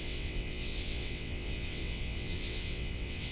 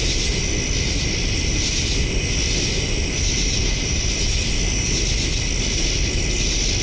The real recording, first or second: second